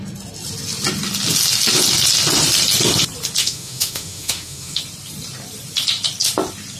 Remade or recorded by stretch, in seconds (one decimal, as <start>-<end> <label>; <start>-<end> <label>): 0.0-3.4 recorded; 3.4-4.8 remade; 4.8-6.8 recorded